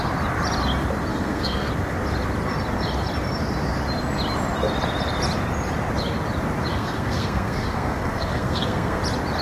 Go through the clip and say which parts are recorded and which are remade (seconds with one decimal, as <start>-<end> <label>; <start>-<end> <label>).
0.0-1.1 recorded; 1.1-1.7 remade; 1.7-6.7 recorded; 6.7-9.0 remade; 9.0-9.4 recorded